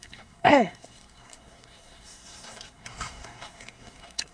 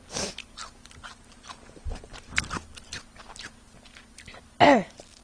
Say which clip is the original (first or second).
second